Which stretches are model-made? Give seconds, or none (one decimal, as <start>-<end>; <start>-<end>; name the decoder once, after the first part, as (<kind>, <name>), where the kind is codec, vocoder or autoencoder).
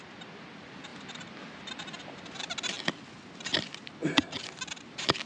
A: none